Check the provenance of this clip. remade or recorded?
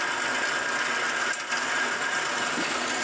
recorded